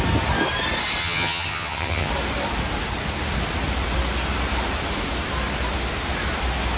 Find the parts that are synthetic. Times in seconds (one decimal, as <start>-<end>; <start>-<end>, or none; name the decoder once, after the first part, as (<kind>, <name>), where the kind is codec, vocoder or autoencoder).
1.0-2.1 (vocoder, HiFi-GAN)